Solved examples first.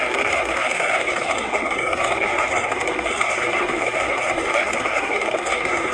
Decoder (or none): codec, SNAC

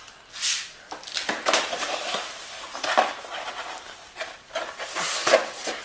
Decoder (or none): none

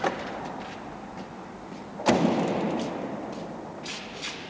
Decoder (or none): none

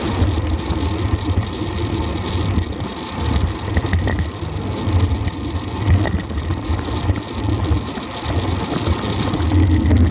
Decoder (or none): none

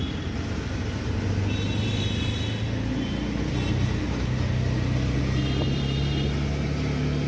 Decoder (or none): none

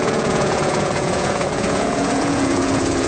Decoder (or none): vocoder, Vocos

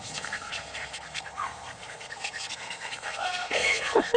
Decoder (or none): codec, SNAC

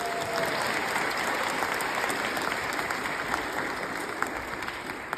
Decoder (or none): none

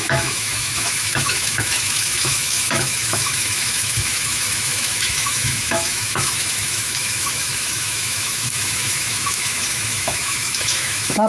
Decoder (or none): autoencoder, DAC-VAE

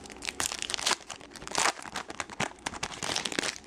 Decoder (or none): vocoder, BigVGAN v2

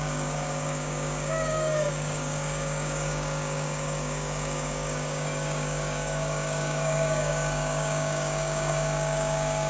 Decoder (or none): codec, DAC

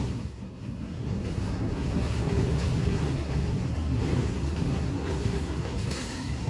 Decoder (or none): codec, SNAC